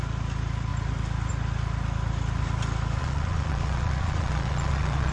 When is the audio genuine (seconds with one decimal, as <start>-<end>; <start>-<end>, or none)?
0.0-3.0